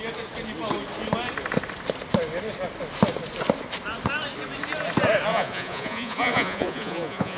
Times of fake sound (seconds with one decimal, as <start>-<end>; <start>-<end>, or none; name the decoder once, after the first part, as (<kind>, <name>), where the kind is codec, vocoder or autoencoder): 5.3-7.4 (vocoder, Vocos)